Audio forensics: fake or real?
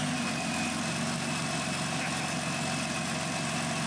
real